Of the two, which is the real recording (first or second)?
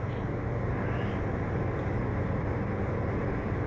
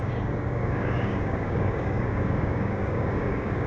first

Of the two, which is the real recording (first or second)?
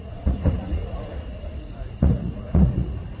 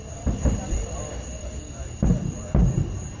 second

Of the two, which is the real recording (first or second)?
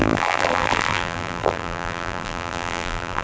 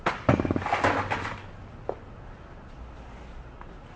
second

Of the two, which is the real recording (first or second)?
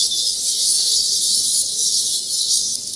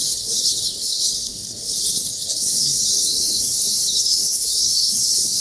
first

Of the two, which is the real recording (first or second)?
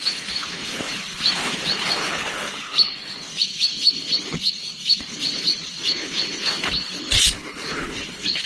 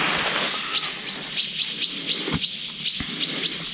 second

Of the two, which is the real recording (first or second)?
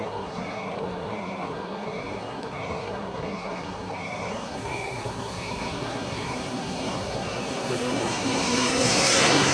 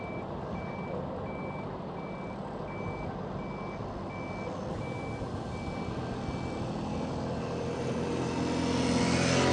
second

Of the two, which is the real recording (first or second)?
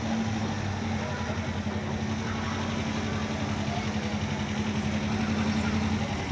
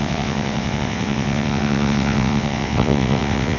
first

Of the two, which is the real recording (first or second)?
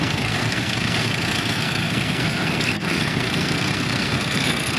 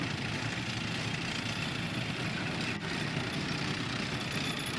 second